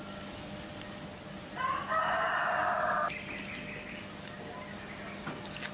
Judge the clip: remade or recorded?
recorded